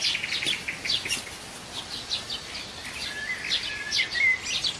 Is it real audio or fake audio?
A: real